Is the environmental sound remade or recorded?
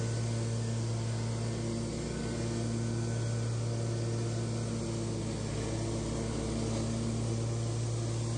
recorded